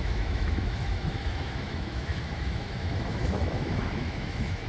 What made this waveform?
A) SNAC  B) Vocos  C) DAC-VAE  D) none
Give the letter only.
C